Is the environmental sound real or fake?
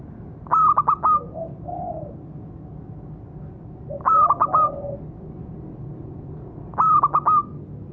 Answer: real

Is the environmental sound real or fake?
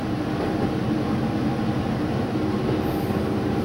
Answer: real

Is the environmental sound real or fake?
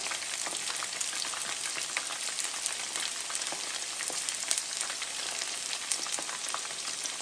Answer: real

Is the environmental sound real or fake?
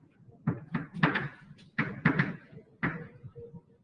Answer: fake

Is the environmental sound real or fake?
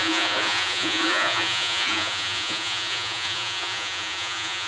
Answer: fake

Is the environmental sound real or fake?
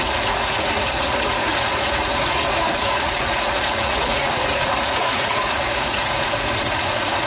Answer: fake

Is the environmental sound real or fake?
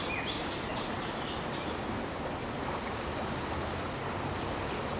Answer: real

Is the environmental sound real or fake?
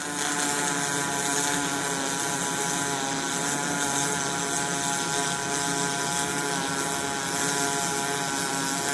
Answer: real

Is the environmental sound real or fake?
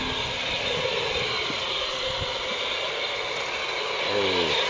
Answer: real